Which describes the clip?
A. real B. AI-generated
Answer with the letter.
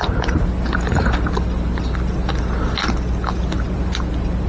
A